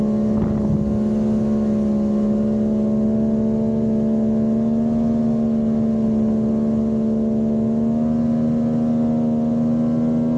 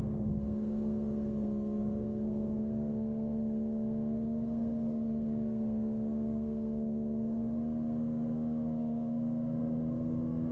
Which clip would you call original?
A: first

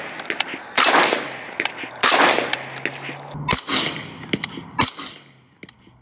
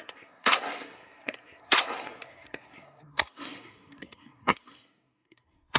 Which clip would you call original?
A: first